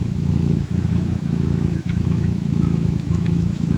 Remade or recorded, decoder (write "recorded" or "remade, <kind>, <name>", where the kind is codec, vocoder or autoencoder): remade, autoencoder, DAC-VAE